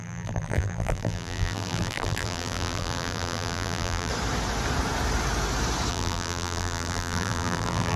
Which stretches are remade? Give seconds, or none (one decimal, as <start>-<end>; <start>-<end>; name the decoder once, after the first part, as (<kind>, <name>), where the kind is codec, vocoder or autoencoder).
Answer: 0.0-4.1 (vocoder, BigVGAN v2); 5.9-8.0

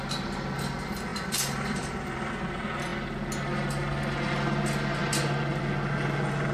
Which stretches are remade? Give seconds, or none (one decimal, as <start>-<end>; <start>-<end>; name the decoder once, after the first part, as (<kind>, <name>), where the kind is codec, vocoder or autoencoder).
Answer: 1.1-2.3 (vocoder, BigVGAN v2)

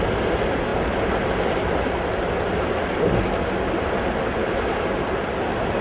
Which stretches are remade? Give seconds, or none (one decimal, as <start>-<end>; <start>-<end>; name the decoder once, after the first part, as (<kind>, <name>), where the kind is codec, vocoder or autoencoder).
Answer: none

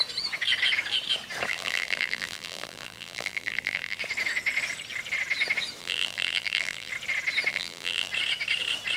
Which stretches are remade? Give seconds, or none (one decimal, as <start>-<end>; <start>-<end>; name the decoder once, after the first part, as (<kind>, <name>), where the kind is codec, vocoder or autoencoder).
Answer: 1.5-4.0 (vocoder, BigVGAN v2); 5.8-6.9; 7.5-8.1

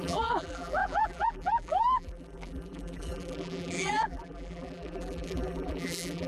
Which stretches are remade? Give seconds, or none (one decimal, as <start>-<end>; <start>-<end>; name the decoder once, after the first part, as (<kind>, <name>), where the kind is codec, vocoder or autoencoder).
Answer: 0.0-6.3 (vocoder, BigVGAN v2)

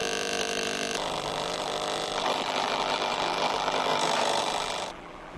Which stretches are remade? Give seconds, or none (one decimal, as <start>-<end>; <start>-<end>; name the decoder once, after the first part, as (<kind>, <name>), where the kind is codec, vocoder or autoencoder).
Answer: 0.0-3.9 (vocoder, BigVGAN v2); 4.4-5.4

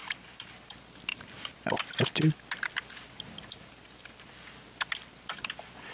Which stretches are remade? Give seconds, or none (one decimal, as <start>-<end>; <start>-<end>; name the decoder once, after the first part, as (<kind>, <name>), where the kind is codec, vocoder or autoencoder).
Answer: 0.0-0.5 (vocoder, BigVGAN v2); 1.1-1.7